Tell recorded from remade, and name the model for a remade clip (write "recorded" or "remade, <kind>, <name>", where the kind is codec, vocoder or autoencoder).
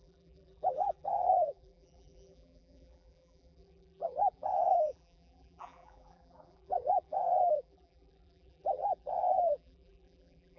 remade, vocoder, BigVGAN v2